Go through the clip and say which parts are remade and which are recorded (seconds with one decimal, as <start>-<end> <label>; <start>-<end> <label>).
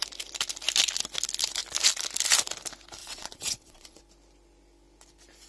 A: 0.0-3.0 recorded; 3.0-4.0 remade; 4.0-5.5 recorded